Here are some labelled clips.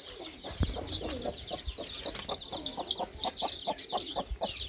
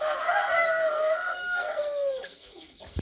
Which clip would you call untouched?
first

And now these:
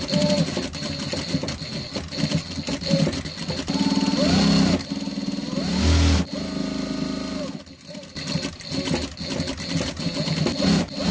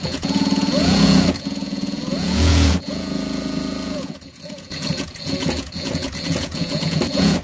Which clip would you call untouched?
first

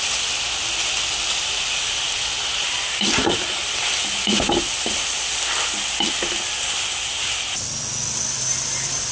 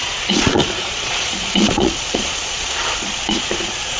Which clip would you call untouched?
first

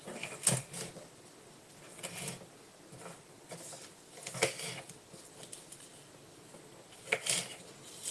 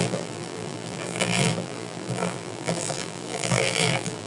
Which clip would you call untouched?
first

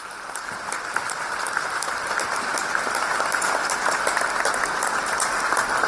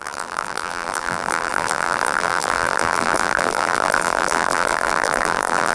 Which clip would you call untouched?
first